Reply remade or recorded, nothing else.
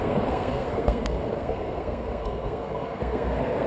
remade